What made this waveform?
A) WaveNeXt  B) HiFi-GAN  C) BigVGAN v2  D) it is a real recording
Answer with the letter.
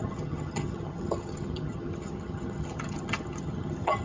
B